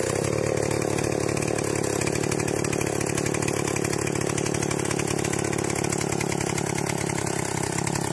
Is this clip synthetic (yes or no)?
no